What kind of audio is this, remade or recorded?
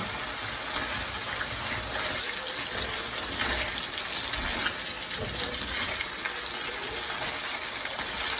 recorded